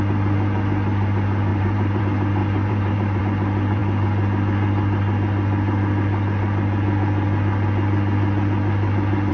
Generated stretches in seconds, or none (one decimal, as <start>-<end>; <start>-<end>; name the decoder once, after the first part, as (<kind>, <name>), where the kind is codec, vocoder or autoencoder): 1.5-2.0 (vocoder, BigVGAN v2); 2.4-3.2